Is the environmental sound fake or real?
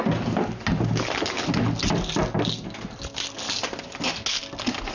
real